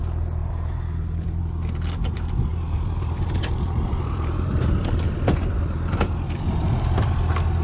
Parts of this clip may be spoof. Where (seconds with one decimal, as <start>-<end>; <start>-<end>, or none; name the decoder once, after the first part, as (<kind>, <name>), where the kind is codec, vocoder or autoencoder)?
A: 2.5-6.8 (vocoder, BigVGAN v2)